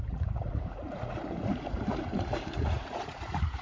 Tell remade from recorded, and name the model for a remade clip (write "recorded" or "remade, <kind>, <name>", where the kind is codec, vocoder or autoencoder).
remade, vocoder, Vocos